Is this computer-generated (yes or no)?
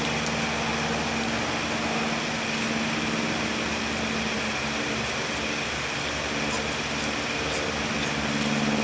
no